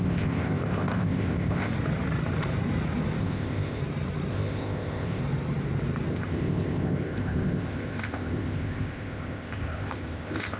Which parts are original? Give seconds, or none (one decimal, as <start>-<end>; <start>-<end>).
1.7-3.2; 3.8-4.3; 5.2-6.1